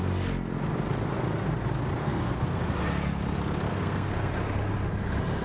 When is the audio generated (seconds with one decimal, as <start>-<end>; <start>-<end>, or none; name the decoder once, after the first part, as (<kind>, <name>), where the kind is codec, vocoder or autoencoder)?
2.0-2.6 (codec, SNAC); 3.7-4.3

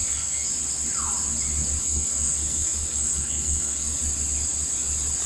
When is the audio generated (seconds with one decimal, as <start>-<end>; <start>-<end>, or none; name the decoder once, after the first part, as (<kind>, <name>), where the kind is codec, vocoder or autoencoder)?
0.0-0.5 (codec, SNAC); 1.8-4.0

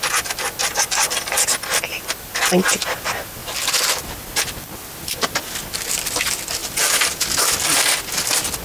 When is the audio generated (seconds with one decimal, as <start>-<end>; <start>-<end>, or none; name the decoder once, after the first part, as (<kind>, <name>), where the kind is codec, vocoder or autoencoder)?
3.4-5.4 (vocoder, BigVGAN v2); 6.6-7.7

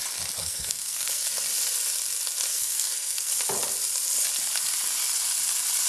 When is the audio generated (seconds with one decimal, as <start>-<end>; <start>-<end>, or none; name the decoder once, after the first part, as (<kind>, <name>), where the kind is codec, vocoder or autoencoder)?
0.4-1.3 (codec, SNAC); 2.5-3.3

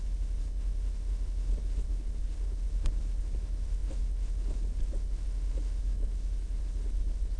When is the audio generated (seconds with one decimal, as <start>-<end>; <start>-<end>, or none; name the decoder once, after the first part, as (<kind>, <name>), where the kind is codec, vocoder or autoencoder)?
0.0-7.4 (codec, HILCodec)

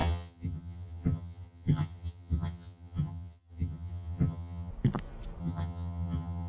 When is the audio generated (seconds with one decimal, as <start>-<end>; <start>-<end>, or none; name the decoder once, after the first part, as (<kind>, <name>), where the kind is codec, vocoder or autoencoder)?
0.0-4.7 (vocoder, HiFi-GAN); 5.4-6.5

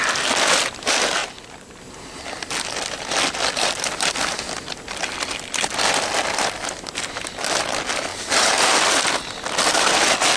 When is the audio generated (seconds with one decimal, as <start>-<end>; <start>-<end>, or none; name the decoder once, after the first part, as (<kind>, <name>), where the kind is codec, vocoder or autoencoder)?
1.2-1.8 (vocoder, BigVGAN v2)